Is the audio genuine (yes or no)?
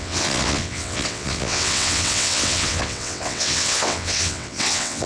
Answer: no